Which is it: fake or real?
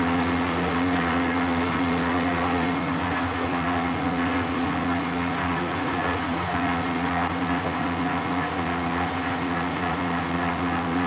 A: fake